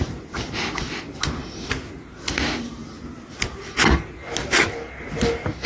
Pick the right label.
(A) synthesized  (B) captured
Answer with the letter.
B